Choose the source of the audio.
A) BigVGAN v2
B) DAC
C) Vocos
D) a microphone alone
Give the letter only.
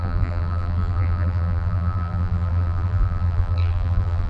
A